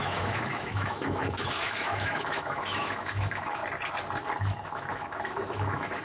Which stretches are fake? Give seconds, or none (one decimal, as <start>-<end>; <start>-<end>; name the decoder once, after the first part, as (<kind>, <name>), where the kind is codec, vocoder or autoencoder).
0.0-3.6 (autoencoder, DAC-VAE); 4.4-6.0